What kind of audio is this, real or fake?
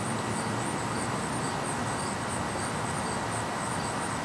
real